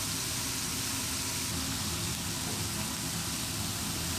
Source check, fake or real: real